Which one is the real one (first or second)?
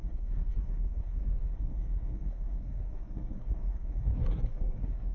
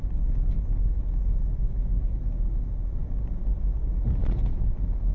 second